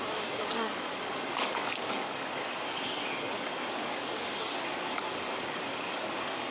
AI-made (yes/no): yes